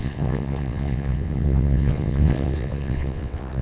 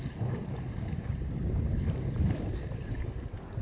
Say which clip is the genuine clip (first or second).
second